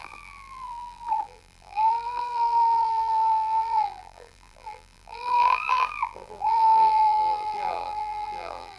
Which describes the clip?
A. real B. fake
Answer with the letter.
B